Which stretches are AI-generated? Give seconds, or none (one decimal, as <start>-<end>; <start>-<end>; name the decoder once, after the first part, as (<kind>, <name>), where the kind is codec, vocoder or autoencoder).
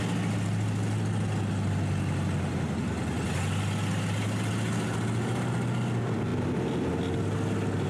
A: none